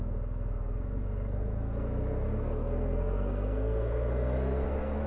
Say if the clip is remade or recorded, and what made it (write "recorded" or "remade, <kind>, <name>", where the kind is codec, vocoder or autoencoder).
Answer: remade, codec, SNAC